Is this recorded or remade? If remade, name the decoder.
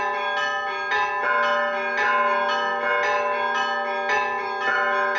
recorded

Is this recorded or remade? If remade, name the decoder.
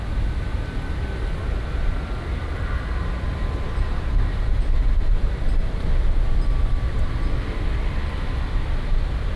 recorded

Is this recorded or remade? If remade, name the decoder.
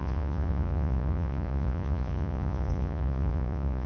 remade, vocoder, Vocos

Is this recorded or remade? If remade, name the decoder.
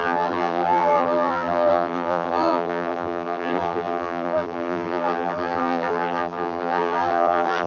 remade, vocoder, BigVGAN v2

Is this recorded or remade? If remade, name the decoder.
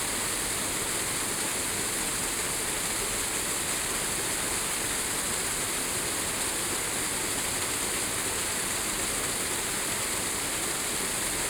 recorded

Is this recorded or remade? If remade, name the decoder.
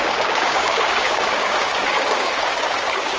remade, codec, DAC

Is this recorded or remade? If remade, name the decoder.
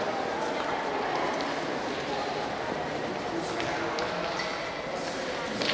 recorded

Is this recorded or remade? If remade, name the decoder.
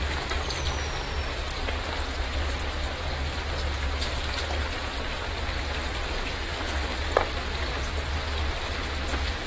recorded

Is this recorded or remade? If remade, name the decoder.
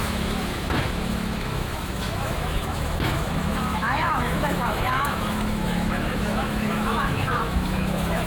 remade, autoencoder, DAC-VAE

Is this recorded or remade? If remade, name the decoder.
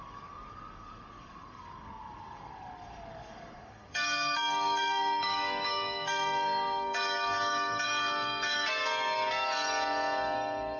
remade, codec, DAC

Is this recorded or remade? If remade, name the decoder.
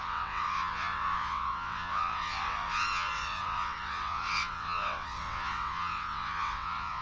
remade, vocoder, WaveNeXt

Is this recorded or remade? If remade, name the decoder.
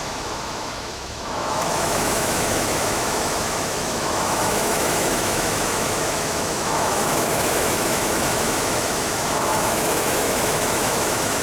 remade, autoencoder, DAC-VAE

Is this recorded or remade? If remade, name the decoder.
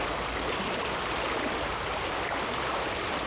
recorded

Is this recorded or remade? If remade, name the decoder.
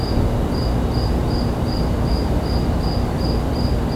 recorded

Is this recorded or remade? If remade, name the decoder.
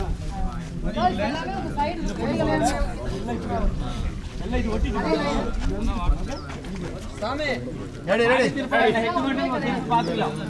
recorded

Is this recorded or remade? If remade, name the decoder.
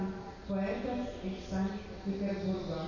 recorded